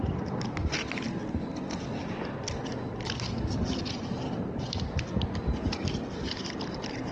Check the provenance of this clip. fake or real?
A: real